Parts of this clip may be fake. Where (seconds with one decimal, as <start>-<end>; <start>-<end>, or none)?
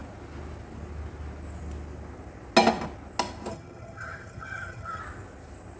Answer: 3.5-5.0